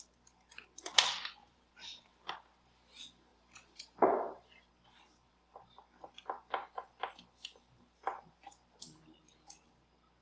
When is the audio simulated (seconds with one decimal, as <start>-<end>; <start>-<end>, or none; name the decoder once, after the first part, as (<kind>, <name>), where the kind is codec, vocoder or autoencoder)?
1.4-2.1 (vocoder, BigVGAN v2); 3.3-4.7